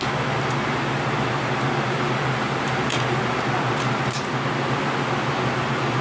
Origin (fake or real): real